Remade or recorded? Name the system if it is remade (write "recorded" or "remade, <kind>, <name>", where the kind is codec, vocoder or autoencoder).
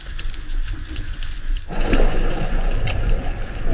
remade, vocoder, Vocos